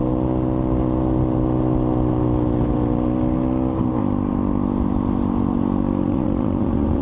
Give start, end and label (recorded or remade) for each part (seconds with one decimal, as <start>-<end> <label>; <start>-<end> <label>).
0.0-6.0 recorded; 6.0-7.0 remade